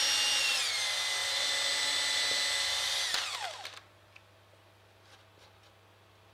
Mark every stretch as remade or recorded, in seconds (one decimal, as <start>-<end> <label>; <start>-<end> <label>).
0.0-6.3 recorded